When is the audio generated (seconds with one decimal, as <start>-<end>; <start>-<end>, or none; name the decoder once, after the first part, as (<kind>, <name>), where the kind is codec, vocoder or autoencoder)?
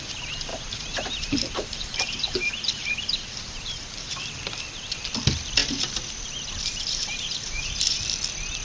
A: 0.5-4.2 (vocoder, BigVGAN v2); 5.6-8.0